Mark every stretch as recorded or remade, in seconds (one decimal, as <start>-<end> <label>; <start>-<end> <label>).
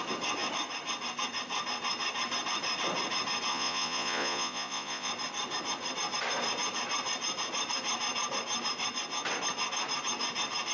0.0-3.5 recorded; 3.5-5.1 remade; 5.1-10.7 recorded